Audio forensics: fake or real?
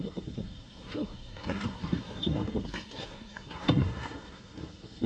fake